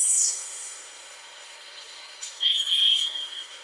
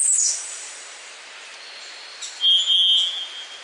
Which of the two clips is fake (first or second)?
first